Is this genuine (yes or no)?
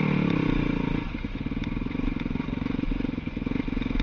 yes